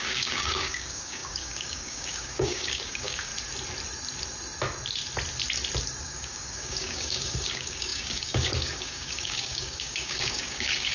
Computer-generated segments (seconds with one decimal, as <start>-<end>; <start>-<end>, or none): 0.0-3.3; 6.0-10.9